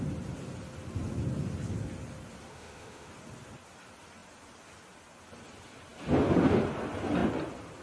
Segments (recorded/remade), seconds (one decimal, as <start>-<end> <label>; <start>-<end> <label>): 0.0-2.5 recorded; 2.5-3.1 remade; 3.1-7.8 recorded